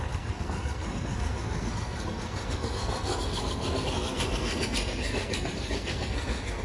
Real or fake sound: fake